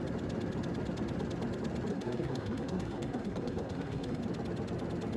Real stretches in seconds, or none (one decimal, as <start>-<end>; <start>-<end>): 0.0-1.9; 4.2-5.2